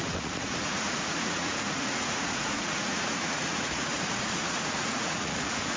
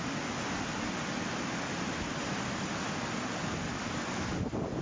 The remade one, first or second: first